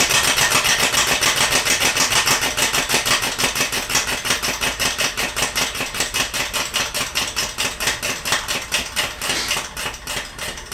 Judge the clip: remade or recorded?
recorded